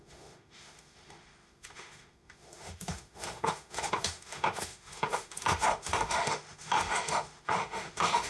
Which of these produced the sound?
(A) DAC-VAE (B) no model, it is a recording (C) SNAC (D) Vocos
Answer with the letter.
A